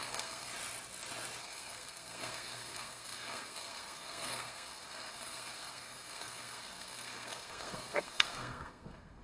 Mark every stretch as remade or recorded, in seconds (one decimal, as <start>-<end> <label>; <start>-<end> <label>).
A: 0.0-0.5 remade; 0.5-1.4 recorded; 1.4-9.2 remade

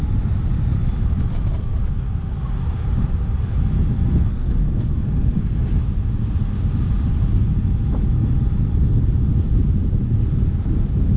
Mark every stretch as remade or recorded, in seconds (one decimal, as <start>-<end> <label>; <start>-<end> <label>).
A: 0.0-4.2 recorded; 4.2-5.8 remade; 5.8-11.2 recorded

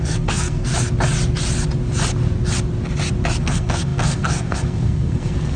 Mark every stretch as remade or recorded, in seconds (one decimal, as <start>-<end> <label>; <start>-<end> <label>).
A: 0.0-0.7 remade; 0.7-3.4 recorded; 3.4-5.6 remade

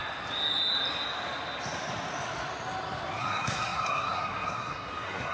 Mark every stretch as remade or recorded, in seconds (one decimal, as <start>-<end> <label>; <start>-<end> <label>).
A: 0.0-3.2 recorded; 3.2-5.3 remade

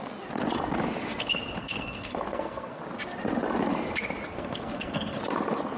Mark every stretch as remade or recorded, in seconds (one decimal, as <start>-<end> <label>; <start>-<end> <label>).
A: 0.0-1.6 recorded; 1.6-2.8 remade; 2.8-4.3 recorded; 4.3-5.2 remade; 5.2-5.8 recorded